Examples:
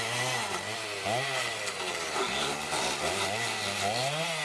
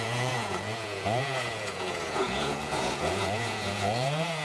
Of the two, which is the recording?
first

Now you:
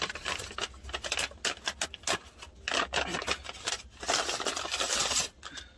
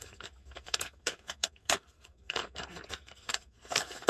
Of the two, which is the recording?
first